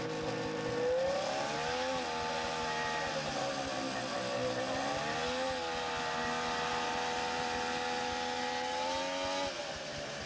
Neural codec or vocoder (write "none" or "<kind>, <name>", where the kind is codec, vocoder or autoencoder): none